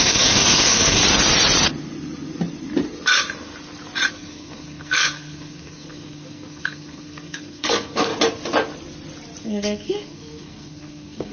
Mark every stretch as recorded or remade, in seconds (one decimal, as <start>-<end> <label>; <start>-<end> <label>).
0.0-1.0 remade; 1.0-4.1 recorded; 4.1-8.1 remade; 8.1-9.4 recorded; 9.4-11.3 remade